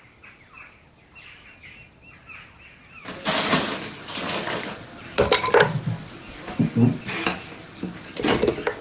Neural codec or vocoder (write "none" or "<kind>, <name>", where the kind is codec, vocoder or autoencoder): none